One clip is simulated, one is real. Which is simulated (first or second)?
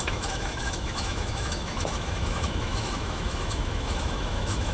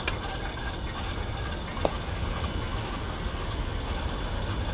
first